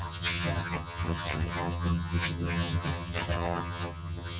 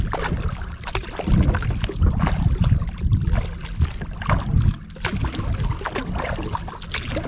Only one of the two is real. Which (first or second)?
second